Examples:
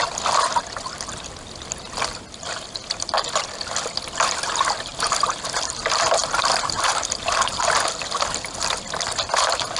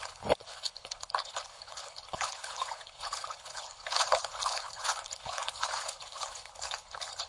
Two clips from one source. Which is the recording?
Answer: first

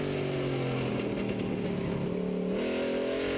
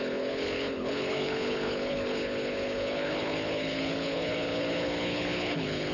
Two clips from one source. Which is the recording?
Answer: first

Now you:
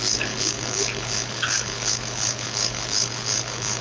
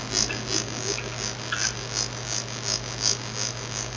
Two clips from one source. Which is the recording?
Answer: second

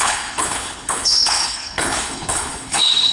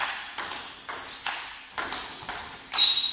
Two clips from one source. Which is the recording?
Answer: second